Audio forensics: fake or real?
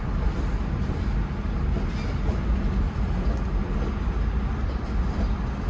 real